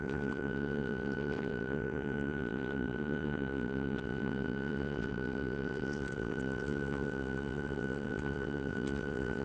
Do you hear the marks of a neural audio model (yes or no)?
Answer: yes